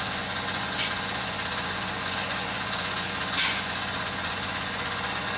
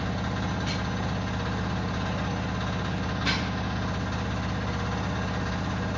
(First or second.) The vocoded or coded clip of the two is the first